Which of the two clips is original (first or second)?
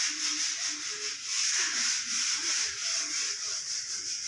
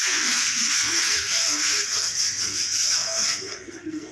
first